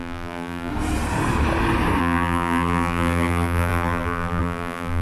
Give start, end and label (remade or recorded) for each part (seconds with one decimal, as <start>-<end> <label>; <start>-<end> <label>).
0.0-0.7 remade; 0.7-2.0 recorded; 2.0-5.0 remade